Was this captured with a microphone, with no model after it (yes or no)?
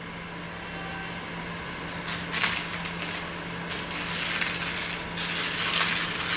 yes